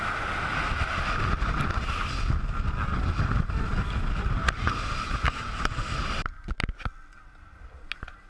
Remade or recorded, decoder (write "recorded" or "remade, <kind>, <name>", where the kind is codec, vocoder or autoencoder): recorded